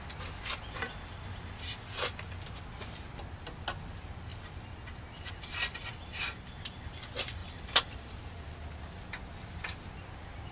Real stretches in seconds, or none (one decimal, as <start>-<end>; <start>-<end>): 0.0-7.4; 8.3-10.5